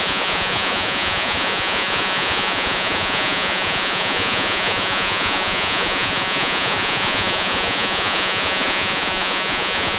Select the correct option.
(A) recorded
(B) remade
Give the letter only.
B